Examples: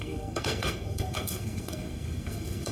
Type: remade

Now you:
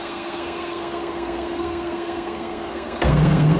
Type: remade